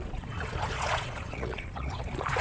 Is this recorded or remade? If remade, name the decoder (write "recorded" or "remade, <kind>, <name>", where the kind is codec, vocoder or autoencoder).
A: remade, vocoder, Vocos